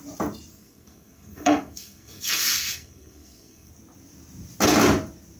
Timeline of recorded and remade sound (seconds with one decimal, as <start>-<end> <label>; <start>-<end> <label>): 0.0-0.5 recorded; 0.5-3.7 remade; 3.7-5.4 recorded